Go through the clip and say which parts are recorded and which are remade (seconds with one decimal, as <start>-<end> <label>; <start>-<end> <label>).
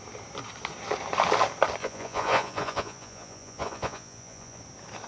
0.0-1.8 recorded; 1.8-4.6 remade; 4.6-5.1 recorded